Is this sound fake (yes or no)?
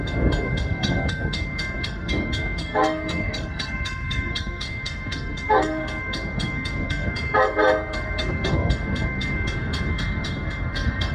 yes